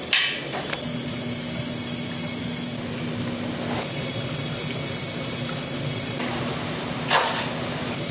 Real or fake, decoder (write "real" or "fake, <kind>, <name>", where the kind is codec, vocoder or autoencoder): real